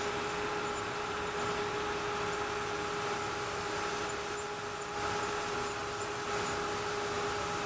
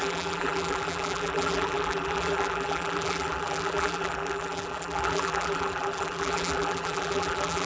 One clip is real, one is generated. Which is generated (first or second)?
second